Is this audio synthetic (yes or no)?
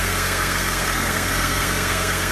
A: yes